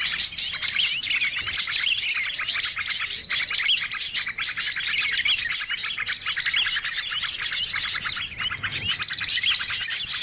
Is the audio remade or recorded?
recorded